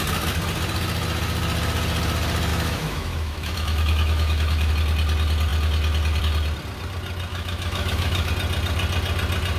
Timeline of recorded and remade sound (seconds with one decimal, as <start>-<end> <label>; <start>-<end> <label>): 0.0-2.5 recorded; 2.5-4.7 remade; 4.7-7.3 recorded; 7.3-8.3 remade; 8.3-9.6 recorded